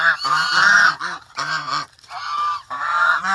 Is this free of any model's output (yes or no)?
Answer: yes